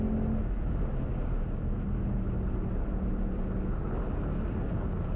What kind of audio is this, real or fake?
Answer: real